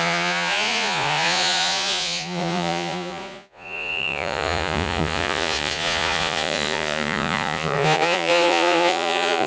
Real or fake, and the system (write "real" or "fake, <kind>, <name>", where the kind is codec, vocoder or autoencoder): fake, vocoder, Vocos